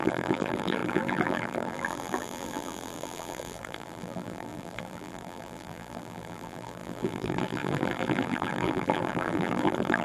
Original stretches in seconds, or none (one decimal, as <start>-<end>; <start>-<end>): none